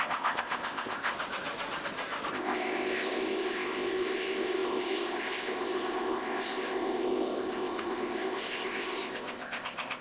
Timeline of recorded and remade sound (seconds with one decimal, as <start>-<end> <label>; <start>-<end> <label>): 0.0-1.1 remade; 1.1-2.3 recorded; 2.3-10.0 remade